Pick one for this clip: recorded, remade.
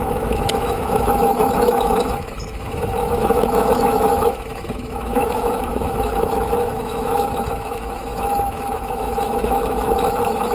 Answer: remade